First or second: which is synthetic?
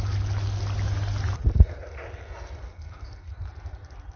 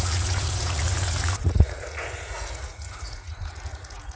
second